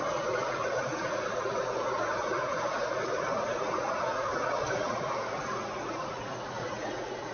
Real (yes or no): no